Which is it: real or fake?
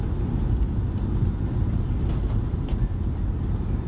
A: real